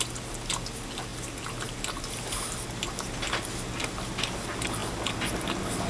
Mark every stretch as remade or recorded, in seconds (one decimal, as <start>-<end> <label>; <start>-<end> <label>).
0.0-5.9 recorded